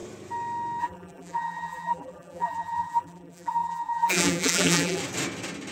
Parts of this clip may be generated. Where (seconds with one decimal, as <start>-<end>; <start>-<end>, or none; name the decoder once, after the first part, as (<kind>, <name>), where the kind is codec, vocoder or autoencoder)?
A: 0.8-5.0 (vocoder, BigVGAN v2)